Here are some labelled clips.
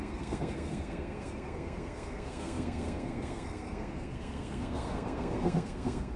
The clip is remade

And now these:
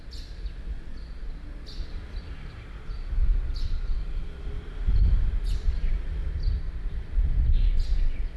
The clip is recorded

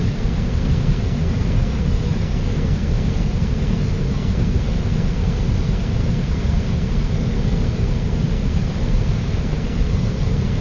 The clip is remade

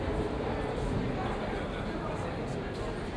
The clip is recorded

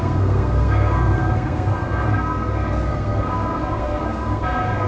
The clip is remade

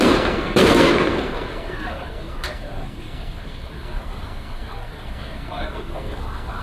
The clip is remade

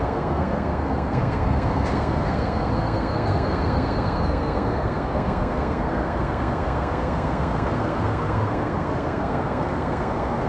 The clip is remade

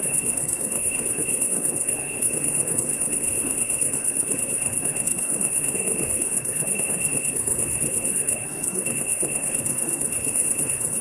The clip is remade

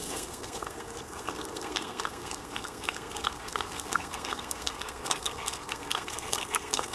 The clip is remade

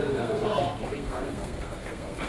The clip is remade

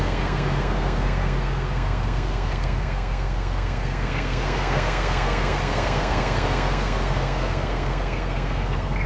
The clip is remade